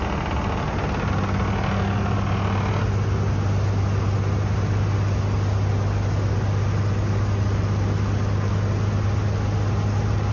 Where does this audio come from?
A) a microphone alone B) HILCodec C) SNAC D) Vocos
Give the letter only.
A